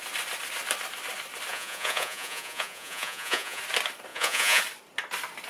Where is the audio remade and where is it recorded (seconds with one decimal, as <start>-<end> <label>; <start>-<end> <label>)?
0.0-1.5 recorded; 1.5-3.6 remade; 3.6-4.1 recorded; 4.1-4.6 remade; 4.6-5.5 recorded